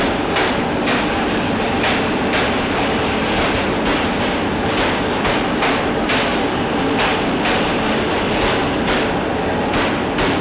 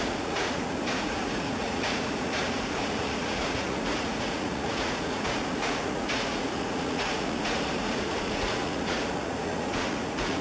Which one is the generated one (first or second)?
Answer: second